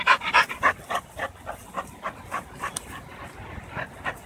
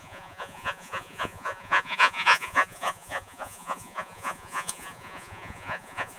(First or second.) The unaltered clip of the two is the first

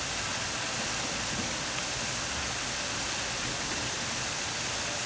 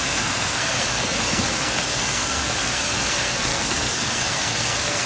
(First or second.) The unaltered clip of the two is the first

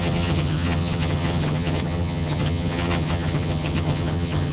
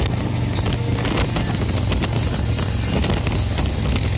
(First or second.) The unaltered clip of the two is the second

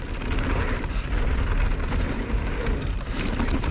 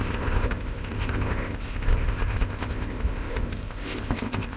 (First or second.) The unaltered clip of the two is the first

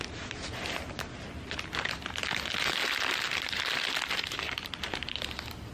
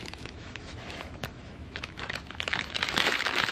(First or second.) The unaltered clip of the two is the first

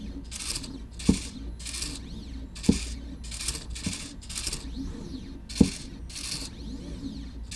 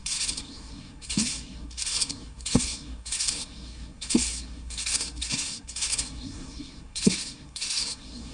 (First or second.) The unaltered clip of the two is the first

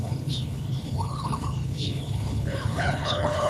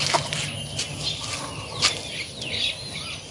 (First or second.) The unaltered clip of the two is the second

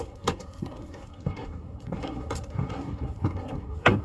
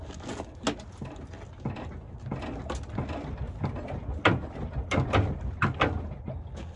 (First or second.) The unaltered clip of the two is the second